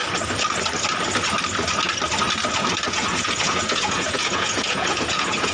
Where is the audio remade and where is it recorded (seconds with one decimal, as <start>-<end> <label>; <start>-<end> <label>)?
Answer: 0.0-2.9 recorded; 2.9-5.5 remade